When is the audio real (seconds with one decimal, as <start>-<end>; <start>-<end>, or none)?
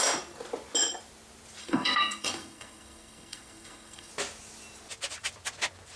0.0-1.6; 4.1-6.0